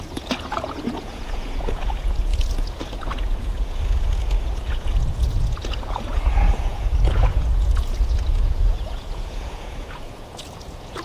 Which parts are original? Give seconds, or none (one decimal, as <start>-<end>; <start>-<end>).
none